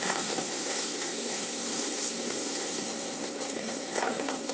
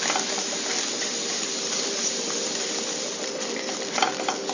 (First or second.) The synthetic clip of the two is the first